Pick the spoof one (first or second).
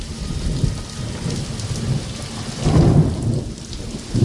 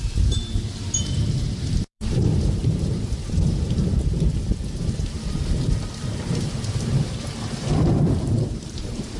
second